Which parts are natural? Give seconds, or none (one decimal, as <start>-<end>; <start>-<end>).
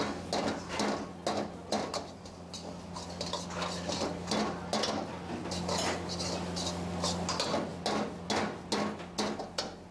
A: 0.0-9.9